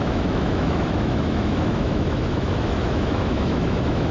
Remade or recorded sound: remade